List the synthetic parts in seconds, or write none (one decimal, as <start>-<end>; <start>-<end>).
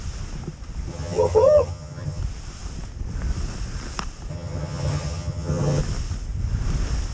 0.9-2.2; 4.3-5.8